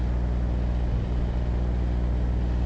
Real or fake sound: real